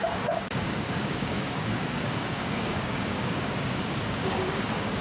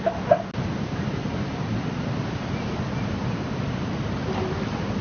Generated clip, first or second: first